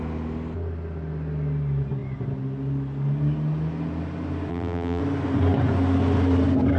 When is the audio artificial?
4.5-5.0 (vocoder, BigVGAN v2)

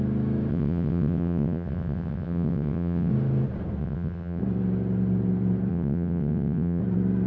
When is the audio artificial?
0.5-3.1 (vocoder, WaveNeXt); 3.8-4.4; 5.7-6.8

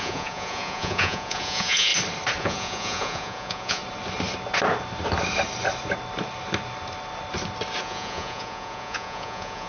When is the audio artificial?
0.0-1.9 (vocoder, Vocos); 2.4-3.8; 7.8-9.7

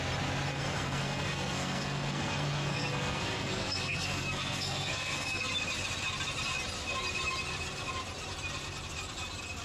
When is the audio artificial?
0.5-5.5 (codec, SNAC)